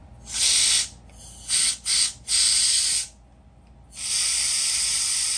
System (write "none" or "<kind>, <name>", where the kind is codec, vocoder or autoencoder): none